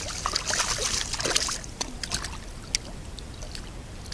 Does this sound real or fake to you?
real